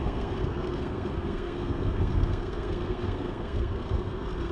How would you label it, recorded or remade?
remade